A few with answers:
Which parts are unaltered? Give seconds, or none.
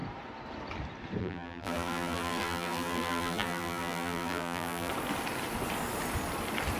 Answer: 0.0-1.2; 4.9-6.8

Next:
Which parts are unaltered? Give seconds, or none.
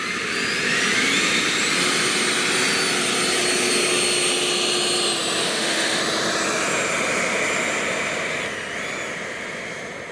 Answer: 0.0-5.4; 6.0-10.1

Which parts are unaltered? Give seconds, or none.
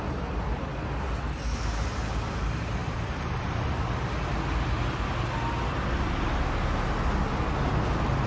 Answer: 0.0-2.8; 3.4-8.3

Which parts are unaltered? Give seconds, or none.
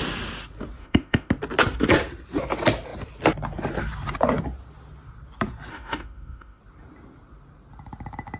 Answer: 0.0-0.8; 1.3-5.7; 6.6-8.4